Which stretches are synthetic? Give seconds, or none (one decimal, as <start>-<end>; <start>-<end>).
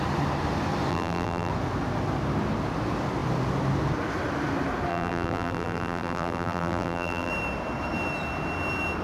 0.9-1.5; 4.9-7.3